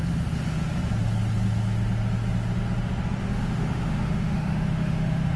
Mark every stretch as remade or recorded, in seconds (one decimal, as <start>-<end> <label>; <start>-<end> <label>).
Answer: 0.0-3.2 recorded; 3.2-5.4 remade